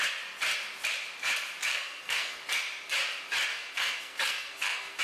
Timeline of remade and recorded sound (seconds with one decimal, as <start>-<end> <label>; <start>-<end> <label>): 0.0-1.7 recorded; 1.7-2.4 remade; 2.4-3.5 recorded; 3.5-5.0 remade